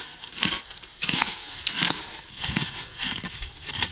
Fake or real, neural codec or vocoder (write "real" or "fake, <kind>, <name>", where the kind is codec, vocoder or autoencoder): fake, codec, SNAC